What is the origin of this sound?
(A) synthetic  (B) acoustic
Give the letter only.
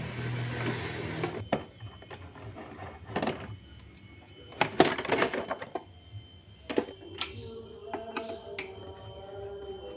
B